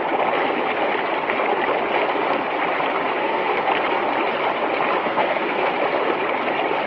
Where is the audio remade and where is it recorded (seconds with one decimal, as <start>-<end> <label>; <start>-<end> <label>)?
0.0-3.2 recorded; 3.2-3.7 remade; 3.7-5.0 recorded; 5.0-5.7 remade; 5.7-6.9 recorded